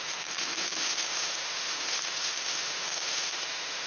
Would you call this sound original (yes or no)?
no